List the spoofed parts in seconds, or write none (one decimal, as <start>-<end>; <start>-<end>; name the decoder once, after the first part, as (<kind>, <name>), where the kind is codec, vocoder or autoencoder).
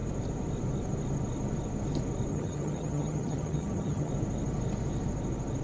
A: 2.3-4.1 (vocoder, HiFi-GAN)